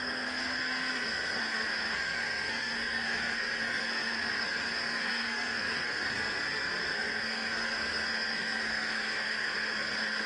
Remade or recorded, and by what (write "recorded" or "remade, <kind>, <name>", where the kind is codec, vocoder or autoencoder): remade, codec, SNAC